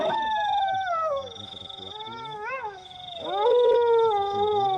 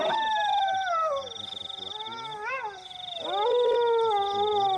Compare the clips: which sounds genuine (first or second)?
second